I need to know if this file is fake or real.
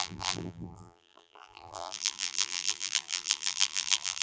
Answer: fake